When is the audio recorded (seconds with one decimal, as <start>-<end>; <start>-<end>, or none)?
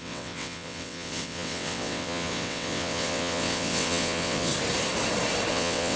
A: 4.5-5.5